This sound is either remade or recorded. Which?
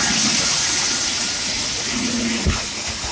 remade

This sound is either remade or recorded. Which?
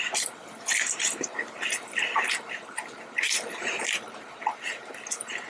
remade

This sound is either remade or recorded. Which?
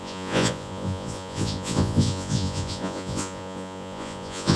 remade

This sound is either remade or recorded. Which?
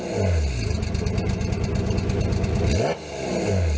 recorded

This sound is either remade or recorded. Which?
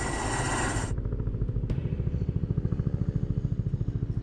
recorded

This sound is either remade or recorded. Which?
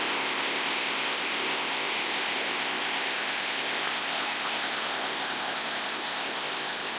remade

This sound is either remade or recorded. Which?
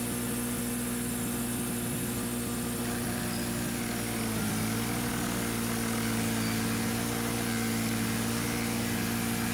recorded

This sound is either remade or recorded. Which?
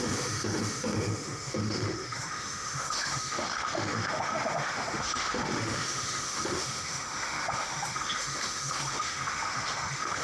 remade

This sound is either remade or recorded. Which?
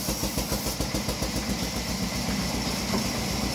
recorded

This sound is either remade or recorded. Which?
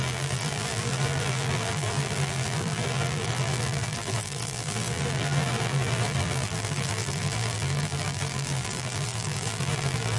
remade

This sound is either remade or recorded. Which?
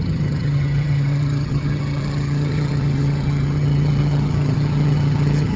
remade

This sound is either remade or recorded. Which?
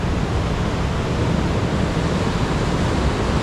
recorded